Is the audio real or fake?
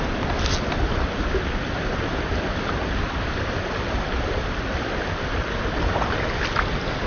real